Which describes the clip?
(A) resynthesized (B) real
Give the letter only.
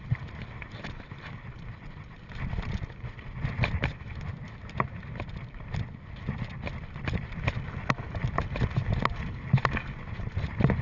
B